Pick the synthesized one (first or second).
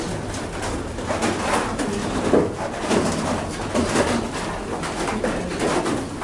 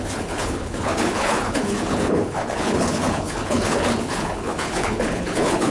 second